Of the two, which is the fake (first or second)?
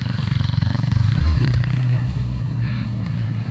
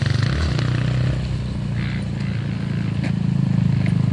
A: first